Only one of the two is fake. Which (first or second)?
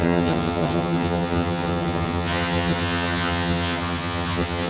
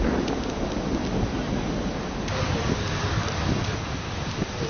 first